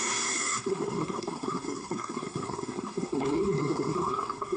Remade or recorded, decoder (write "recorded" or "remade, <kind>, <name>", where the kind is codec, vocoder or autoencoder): remade, codec, SNAC